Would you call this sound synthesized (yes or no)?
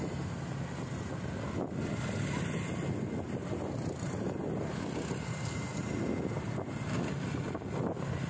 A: no